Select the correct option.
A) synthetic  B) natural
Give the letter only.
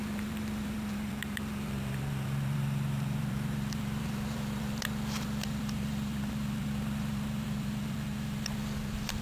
A